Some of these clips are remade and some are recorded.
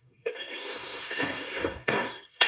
remade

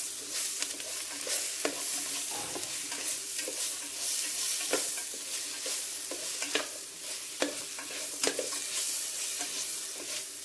recorded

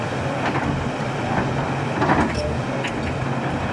recorded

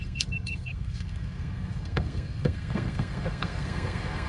remade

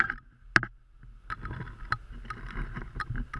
recorded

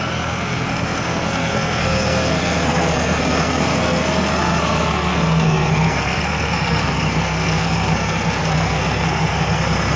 remade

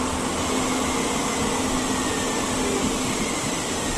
recorded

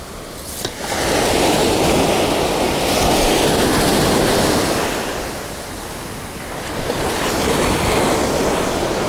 recorded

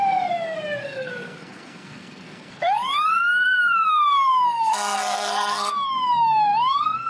remade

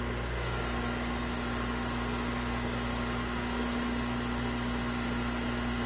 recorded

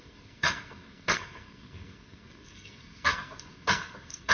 remade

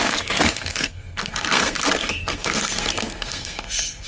remade